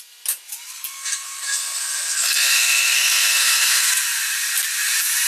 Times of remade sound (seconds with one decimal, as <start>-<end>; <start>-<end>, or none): 0.7-3.9